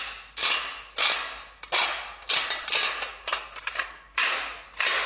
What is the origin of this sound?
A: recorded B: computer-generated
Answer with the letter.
A